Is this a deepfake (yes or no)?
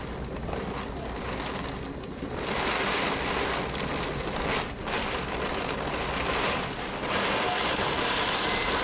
no